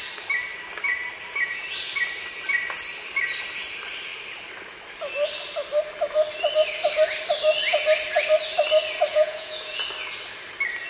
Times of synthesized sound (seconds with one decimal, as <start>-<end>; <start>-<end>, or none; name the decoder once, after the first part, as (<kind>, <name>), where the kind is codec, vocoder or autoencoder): 9.1-9.8 (vocoder, Vocos)